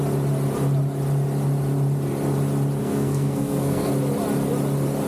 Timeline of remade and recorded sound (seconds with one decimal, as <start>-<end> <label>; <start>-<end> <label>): 0.0-2.8 recorded; 2.8-3.9 remade; 3.9-5.1 recorded